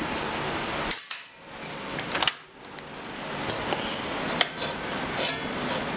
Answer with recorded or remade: recorded